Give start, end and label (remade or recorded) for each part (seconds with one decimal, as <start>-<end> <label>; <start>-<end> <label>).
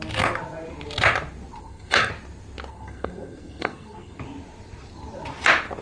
0.0-1.6 recorded; 1.6-2.1 remade; 2.1-2.7 recorded; 2.7-4.2 remade; 4.2-5.8 recorded